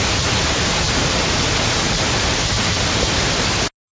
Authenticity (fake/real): real